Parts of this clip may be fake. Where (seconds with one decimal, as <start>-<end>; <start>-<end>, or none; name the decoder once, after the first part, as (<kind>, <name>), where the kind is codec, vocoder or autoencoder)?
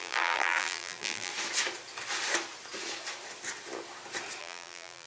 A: 0.0-1.3 (vocoder, BigVGAN v2); 4.4-5.1